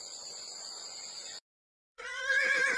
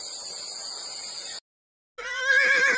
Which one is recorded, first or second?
second